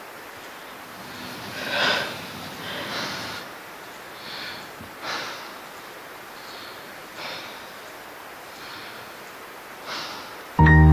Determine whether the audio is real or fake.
real